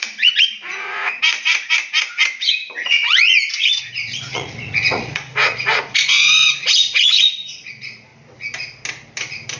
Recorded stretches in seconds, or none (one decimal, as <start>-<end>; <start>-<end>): 8.1-9.6